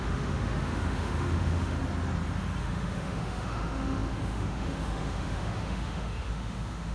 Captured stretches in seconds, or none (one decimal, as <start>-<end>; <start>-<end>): 1.8-2.6

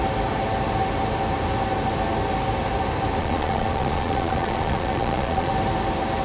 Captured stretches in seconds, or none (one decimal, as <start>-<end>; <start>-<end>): 0.0-3.2; 5.5-6.2